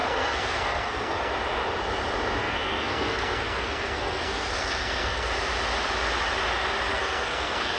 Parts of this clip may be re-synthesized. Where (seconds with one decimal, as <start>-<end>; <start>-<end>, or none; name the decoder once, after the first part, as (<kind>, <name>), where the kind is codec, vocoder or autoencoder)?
0.0-1.3 (codec, SNAC); 2.4-5.3; 6.9-7.8